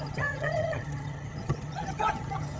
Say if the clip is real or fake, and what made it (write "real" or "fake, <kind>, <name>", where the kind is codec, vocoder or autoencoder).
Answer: fake, vocoder, HiFi-GAN